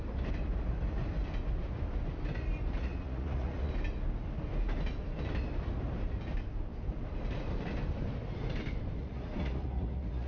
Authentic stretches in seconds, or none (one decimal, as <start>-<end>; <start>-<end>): 0.0-2.8; 3.7-9.0